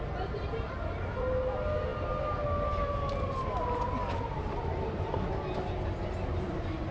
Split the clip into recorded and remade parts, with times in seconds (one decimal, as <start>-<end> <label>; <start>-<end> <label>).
0.0-6.9 recorded